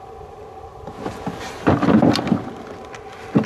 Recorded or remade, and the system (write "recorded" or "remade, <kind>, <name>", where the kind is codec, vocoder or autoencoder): recorded